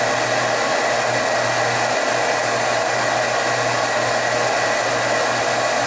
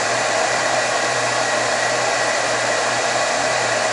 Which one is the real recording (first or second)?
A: first